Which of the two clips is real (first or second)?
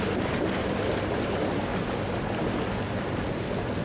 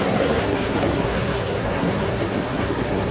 first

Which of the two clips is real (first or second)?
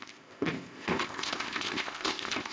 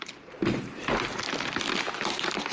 second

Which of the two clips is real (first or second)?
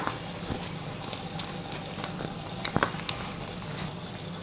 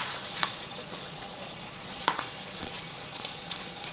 first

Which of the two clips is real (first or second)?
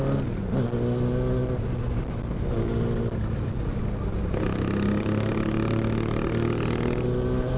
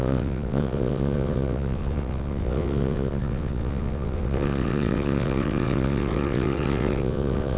first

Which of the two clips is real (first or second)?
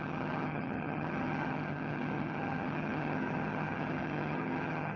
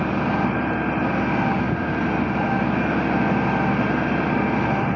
second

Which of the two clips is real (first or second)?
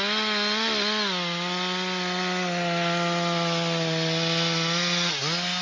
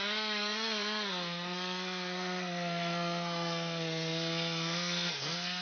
first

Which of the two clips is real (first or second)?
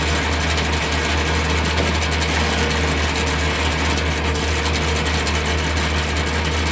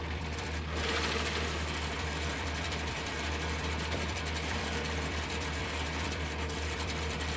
first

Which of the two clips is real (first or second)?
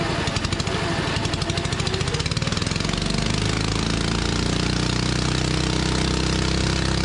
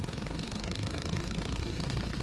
first